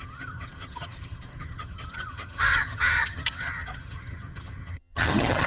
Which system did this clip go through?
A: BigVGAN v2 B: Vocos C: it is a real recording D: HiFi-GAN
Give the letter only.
D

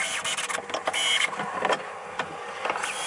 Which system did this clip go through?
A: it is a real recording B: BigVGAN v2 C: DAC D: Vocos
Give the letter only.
A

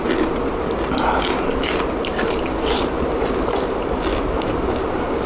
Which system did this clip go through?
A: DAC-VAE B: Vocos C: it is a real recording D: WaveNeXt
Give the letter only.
C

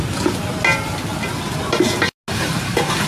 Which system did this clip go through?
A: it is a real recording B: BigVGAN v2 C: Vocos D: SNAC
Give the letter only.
A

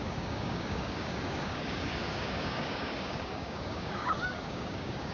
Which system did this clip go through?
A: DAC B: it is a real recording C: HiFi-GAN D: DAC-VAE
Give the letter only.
A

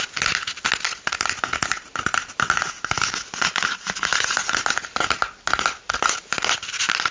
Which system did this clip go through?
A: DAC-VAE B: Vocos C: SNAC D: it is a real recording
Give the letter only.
D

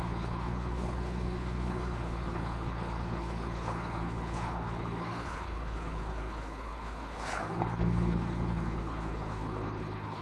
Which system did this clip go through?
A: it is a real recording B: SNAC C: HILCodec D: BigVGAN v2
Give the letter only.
C